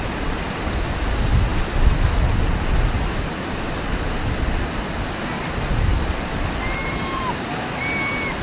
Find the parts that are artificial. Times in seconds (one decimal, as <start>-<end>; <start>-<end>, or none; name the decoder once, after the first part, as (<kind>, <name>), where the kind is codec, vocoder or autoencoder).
5.9-7.5 (vocoder, BigVGAN v2)